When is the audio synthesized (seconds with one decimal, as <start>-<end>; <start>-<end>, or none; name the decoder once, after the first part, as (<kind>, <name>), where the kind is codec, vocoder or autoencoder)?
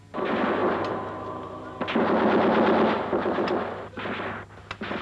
none